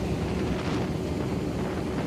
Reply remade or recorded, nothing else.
recorded